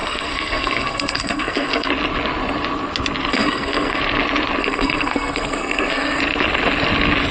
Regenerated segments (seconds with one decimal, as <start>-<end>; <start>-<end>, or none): 0.0-1.9; 3.3-4.0; 4.6-6.2